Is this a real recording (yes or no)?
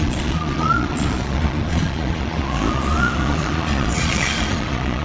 no